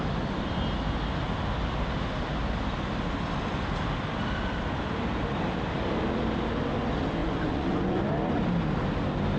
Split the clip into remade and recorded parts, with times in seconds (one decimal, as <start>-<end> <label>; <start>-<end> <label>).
0.0-7.2 recorded; 7.2-8.0 remade; 8.0-9.4 recorded